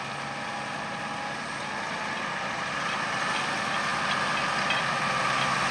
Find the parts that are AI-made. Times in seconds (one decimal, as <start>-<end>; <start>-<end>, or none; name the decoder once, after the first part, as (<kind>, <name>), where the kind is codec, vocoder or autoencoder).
none